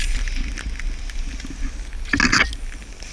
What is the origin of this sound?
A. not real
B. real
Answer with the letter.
B